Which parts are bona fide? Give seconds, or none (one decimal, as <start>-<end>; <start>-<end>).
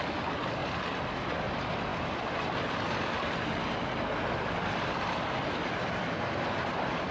1.9-4.7